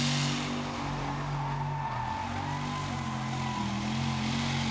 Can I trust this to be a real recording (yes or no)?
yes